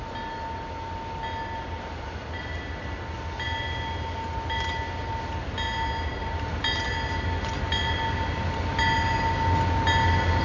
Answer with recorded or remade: recorded